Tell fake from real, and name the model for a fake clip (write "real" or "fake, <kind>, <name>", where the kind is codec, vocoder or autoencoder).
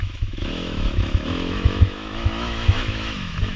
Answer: fake, autoencoder, DAC-VAE